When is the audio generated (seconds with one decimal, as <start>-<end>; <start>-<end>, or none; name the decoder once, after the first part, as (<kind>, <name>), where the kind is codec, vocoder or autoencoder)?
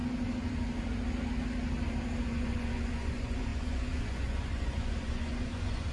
2.2-5.9 (vocoder, Vocos)